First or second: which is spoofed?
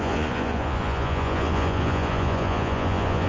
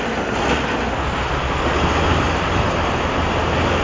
first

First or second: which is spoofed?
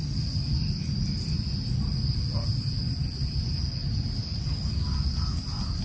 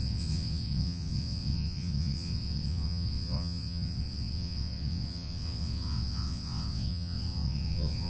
second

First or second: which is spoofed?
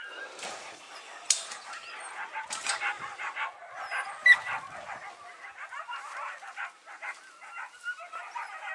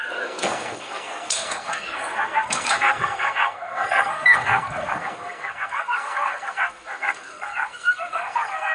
second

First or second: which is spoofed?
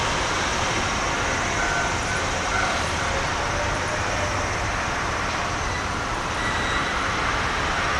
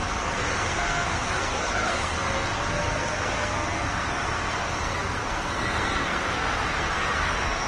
second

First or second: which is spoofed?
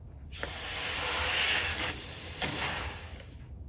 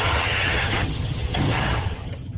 second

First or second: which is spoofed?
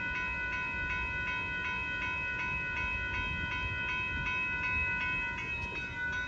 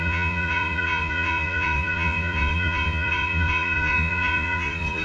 second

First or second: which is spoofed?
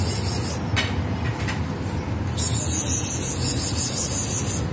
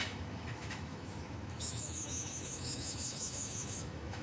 second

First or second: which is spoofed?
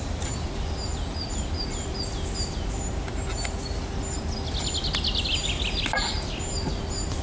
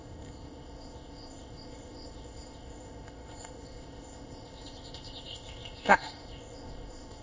second